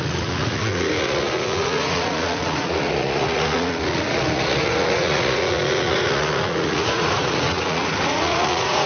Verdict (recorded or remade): remade